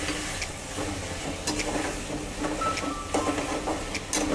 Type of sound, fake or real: real